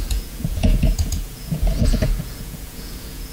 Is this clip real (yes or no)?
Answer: no